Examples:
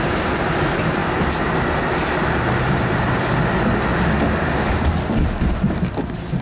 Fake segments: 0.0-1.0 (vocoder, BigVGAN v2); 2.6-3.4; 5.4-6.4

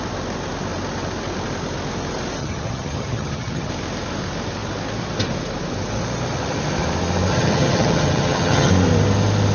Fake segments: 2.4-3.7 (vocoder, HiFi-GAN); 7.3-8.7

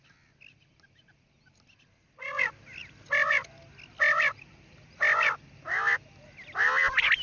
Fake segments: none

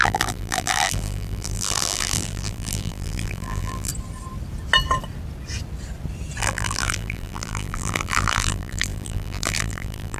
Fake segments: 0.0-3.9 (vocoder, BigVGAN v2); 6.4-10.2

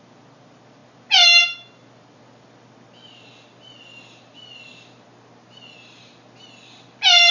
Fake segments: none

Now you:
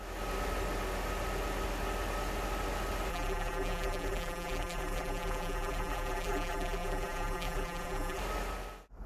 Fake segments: 3.1-8.2 (vocoder, BigVGAN v2)